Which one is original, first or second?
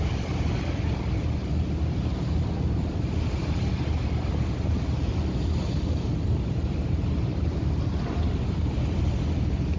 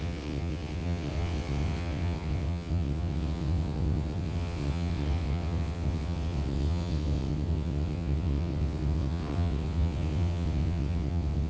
first